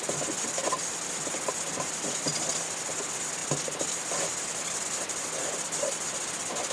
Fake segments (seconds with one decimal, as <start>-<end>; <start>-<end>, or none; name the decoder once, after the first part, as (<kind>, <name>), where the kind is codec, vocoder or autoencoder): none